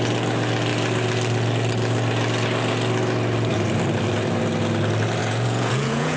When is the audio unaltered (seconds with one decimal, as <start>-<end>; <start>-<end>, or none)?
0.0-5.2